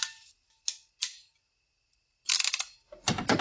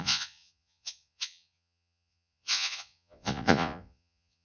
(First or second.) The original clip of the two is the first